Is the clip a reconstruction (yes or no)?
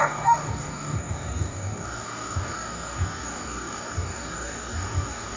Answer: yes